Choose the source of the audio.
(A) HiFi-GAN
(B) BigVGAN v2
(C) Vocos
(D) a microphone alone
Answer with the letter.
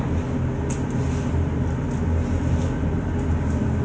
D